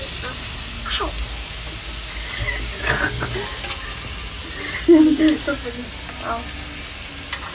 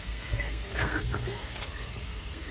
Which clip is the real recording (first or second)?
first